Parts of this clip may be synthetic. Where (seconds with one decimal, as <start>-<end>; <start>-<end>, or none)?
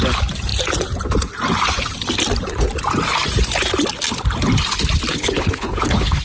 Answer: 5.1-6.2